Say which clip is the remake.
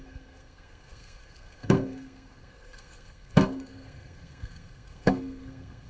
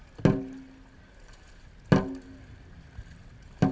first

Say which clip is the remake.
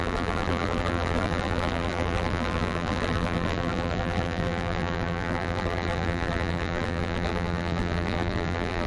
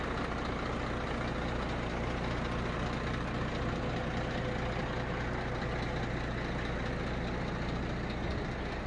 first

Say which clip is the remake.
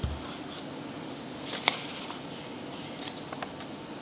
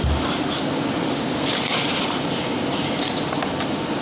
second